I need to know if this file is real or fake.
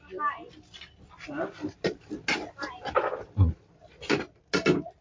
real